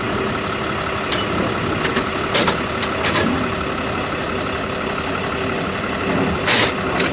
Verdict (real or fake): real